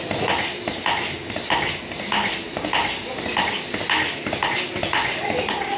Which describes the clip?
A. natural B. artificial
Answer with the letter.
A